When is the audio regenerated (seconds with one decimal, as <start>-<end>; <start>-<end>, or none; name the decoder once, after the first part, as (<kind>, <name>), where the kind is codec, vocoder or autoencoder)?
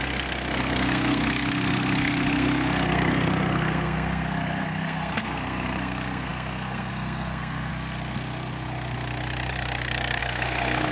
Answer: 0.0-7.7 (codec, SNAC); 10.2-10.9